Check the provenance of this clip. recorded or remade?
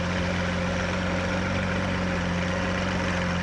recorded